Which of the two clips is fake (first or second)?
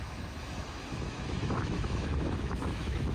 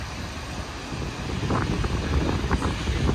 first